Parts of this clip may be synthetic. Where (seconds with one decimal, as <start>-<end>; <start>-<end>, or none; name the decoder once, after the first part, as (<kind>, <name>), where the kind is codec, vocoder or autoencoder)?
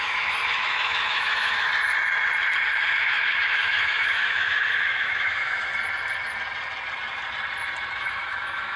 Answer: 0.0-1.7 (autoencoder, DAC-VAE); 3.0-5.7; 7.9-8.8